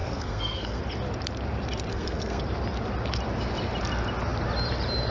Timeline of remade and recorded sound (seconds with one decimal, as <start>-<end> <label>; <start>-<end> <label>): 0.0-0.8 remade; 0.8-1.9 recorded; 1.9-2.4 remade; 2.4-5.1 recorded